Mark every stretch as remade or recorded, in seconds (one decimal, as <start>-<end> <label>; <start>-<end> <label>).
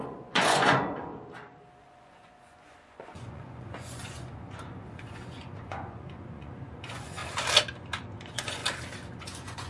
0.0-1.1 remade; 1.1-1.8 recorded; 1.8-7.2 remade; 7.2-8.2 recorded; 8.2-8.6 remade; 8.6-9.2 recorded; 9.2-9.7 remade